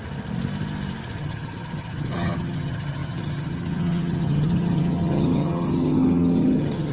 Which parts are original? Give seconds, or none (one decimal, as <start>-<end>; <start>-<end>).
0.0-1.2